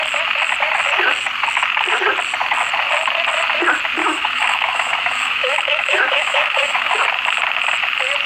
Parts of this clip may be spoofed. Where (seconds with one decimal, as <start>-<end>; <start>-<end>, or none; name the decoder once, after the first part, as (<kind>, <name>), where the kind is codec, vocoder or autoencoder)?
4.0-6.9 (autoencoder, DAC-VAE)